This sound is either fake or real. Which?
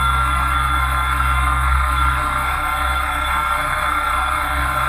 fake